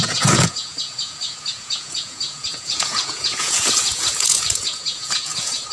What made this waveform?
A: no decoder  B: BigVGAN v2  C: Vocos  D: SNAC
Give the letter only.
C